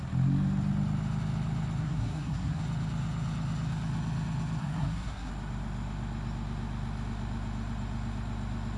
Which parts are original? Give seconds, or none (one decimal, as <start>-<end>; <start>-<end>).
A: 0.0-1.8; 2.6-4.6; 5.3-8.8

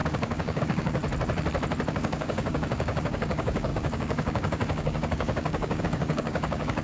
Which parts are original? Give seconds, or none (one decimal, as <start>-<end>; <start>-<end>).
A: 1.0-1.9